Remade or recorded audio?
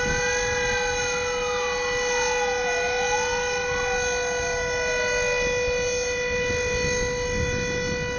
recorded